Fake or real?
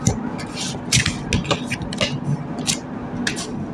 real